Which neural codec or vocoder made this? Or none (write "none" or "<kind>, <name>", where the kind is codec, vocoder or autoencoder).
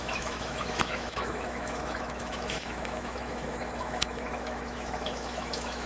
autoencoder, DAC-VAE